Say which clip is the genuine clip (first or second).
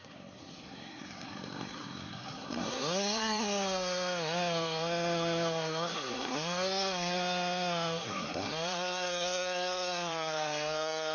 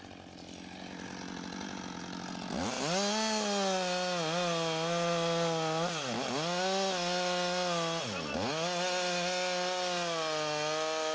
second